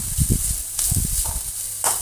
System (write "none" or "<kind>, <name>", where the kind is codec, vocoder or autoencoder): none